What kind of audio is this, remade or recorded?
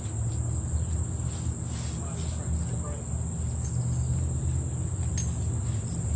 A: recorded